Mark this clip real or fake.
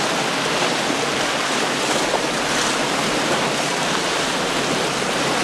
real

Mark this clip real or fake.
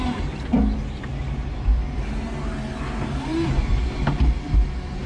real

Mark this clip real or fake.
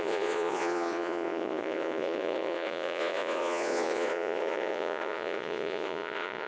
fake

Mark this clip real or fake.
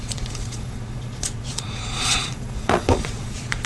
fake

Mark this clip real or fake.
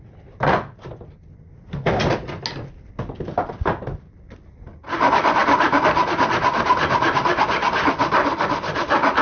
real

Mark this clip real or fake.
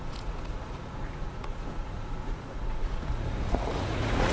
fake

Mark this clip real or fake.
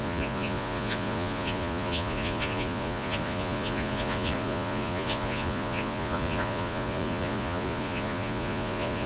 fake